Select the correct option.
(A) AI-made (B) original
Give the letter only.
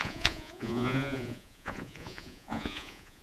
A